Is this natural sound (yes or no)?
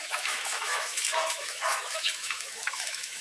no